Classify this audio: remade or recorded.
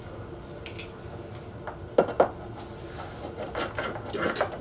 recorded